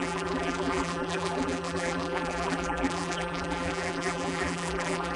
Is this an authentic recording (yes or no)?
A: no